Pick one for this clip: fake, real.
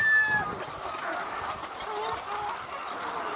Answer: real